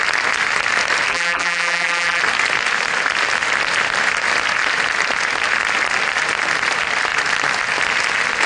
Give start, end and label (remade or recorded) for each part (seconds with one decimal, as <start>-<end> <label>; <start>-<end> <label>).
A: 0.0-1.1 recorded; 1.1-2.2 remade; 2.2-8.5 recorded

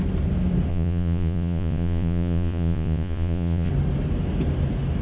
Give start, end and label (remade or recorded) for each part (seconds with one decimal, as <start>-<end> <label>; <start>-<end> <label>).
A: 0.0-0.7 recorded; 0.7-3.7 remade; 3.7-5.0 recorded

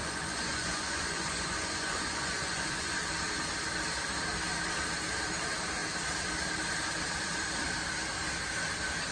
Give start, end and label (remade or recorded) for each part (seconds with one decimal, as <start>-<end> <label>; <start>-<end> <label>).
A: 0.0-3.1 remade; 3.1-9.1 recorded

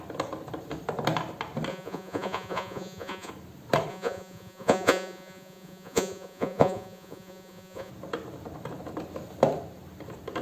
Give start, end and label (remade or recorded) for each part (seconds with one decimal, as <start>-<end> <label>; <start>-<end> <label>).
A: 0.0-1.7 recorded; 1.7-3.3 remade; 3.3-3.9 recorded; 3.9-7.9 remade; 7.9-10.4 recorded

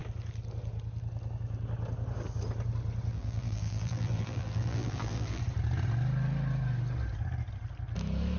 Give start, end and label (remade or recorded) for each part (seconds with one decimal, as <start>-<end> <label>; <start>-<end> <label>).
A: 0.0-3.1 recorded; 3.1-5.4 remade; 5.4-8.4 recorded

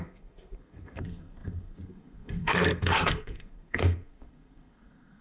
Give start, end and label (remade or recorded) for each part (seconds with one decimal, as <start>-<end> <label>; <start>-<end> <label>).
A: 0.0-5.2 remade

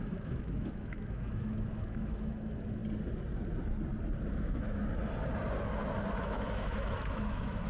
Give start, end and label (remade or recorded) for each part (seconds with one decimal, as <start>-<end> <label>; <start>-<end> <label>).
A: 0.0-2.8 remade; 2.8-4.3 recorded; 4.3-4.8 remade; 4.8-6.2 recorded; 6.2-7.7 remade

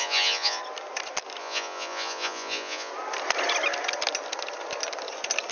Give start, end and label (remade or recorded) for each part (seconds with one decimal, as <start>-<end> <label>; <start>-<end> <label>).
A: 0.0-0.6 remade; 0.6-1.4 recorded; 1.4-2.9 remade; 2.9-5.5 recorded